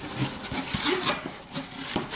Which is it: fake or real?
real